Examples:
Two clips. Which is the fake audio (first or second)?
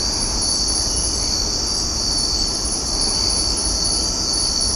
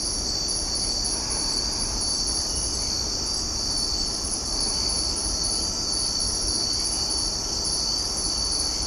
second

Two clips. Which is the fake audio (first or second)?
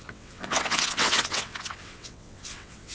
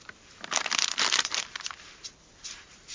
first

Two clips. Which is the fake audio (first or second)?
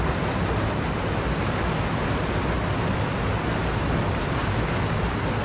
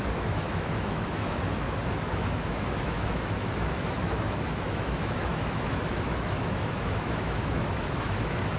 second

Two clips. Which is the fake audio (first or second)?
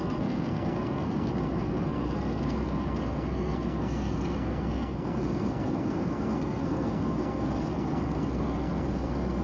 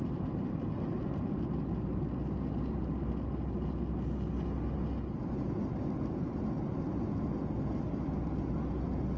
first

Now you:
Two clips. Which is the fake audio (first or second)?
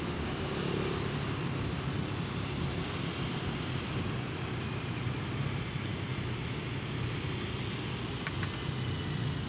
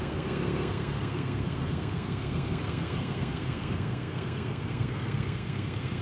second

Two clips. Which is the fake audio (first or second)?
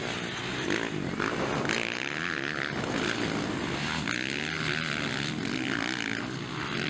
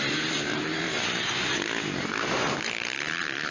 second